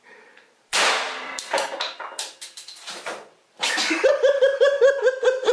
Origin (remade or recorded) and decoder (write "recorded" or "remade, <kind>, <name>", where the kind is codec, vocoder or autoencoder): remade, vocoder, BigVGAN v2